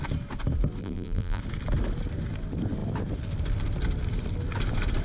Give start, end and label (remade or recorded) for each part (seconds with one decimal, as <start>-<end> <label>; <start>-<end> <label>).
0.0-0.8 recorded; 0.8-1.4 remade; 1.4-5.0 recorded